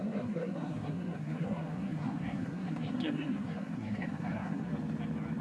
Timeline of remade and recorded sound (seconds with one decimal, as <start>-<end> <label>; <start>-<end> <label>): 0.0-4.7 remade; 4.7-5.4 recorded